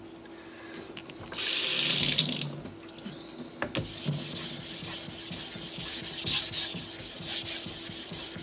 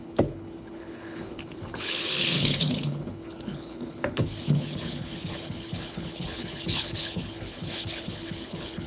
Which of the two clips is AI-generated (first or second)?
second